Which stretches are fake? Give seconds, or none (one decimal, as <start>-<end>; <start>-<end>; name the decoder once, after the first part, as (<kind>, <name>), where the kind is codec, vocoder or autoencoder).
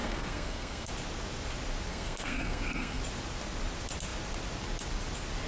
0.0-0.9 (codec, SNAC); 1.9-3.0